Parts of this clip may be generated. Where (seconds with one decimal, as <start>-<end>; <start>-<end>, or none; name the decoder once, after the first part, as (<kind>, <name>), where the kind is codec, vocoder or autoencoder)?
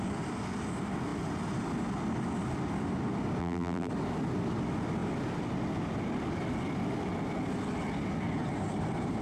3.4-3.9 (vocoder, BigVGAN v2)